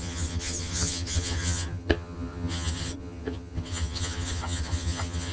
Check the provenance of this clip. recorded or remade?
remade